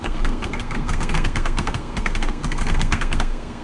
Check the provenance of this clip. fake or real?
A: fake